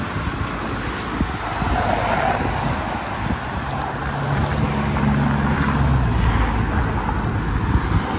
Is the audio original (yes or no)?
yes